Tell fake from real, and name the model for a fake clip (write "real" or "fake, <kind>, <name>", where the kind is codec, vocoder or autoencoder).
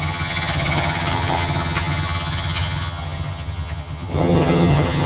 fake, vocoder, HiFi-GAN